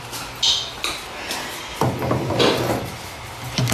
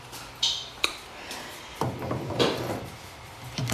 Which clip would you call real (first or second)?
first